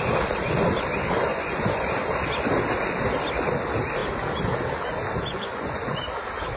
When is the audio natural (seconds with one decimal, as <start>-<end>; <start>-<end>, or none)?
0.0-1.3; 1.9-5.3; 6.1-6.6